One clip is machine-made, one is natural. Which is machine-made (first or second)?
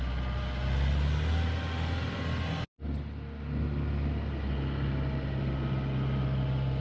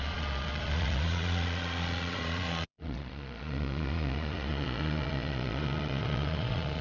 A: second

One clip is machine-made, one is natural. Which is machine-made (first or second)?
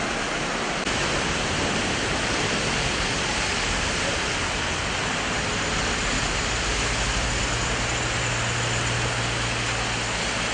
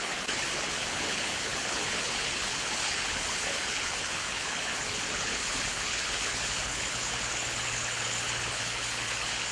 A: second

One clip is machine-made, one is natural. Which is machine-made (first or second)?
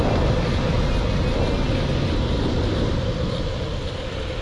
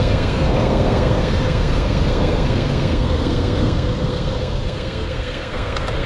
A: second